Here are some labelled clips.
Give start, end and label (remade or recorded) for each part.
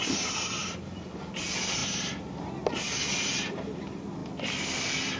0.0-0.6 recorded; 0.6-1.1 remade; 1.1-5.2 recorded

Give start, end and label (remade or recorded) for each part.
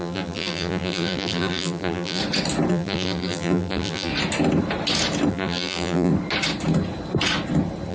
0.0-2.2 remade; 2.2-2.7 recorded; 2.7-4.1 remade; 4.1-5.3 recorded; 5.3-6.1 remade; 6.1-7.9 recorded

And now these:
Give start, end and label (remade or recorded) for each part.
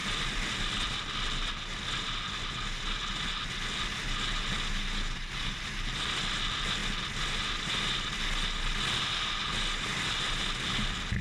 0.0-1.0 remade; 1.0-9.5 recorded; 9.5-10.4 remade; 10.4-11.2 recorded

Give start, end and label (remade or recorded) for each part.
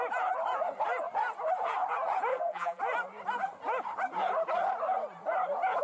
0.0-2.3 recorded; 2.3-2.8 remade; 2.8-5.8 recorded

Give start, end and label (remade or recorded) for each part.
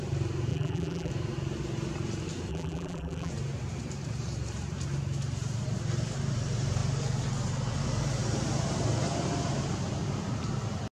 0.0-0.5 recorded; 0.5-1.1 remade; 1.1-2.5 recorded; 2.5-3.3 remade; 3.3-10.9 recorded